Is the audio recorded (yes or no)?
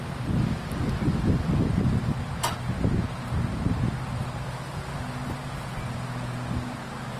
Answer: yes